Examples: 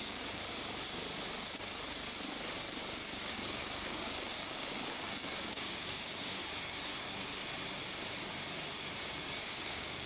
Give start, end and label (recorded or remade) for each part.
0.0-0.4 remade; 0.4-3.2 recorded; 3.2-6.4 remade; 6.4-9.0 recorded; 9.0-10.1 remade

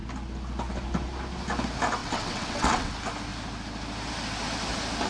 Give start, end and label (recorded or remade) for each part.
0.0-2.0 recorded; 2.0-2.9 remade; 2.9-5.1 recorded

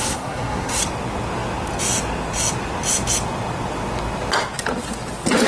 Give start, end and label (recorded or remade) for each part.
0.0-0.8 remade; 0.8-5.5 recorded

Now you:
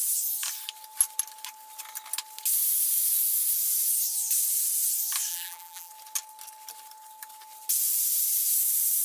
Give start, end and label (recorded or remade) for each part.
0.0-5.3 recorded; 5.3-5.9 remade; 5.9-9.0 recorded

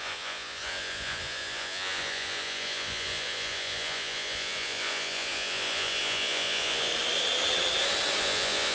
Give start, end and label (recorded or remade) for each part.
0.0-6.9 remade; 6.9-8.2 recorded; 8.2-8.7 remade

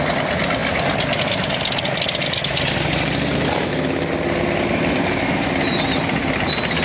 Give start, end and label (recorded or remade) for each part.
0.0-6.8 recorded

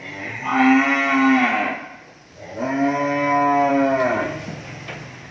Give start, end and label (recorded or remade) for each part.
0.0-5.3 recorded

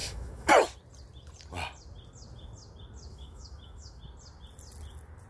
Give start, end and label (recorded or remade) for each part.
0.0-0.5 remade; 0.5-3.1 recorded; 3.1-4.0 remade; 4.0-5.3 recorded